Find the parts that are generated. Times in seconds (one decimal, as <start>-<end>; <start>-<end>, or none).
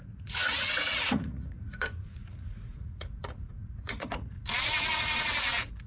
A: 0.0-5.9